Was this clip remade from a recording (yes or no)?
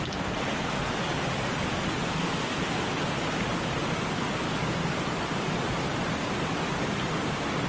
no